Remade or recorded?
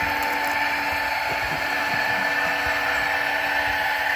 recorded